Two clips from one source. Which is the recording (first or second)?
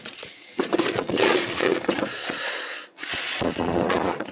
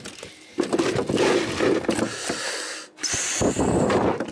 second